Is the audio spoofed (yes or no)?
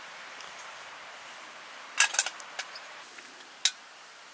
no